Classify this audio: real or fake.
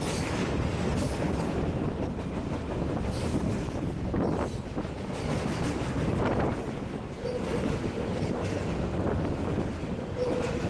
real